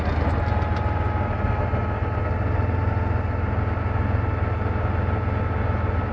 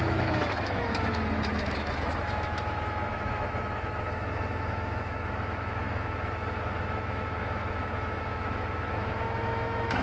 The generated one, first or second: second